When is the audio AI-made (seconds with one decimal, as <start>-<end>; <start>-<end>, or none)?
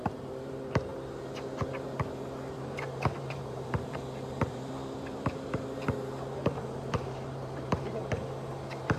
0.0-0.9; 2.5-8.0; 8.5-9.0